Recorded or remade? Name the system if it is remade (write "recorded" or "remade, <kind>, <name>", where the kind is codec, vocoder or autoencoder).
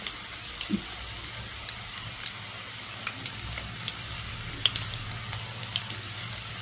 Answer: recorded